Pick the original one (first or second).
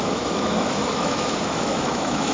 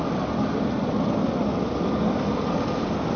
second